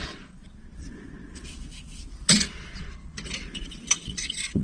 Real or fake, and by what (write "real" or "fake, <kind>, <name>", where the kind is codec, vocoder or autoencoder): fake, vocoder, Vocos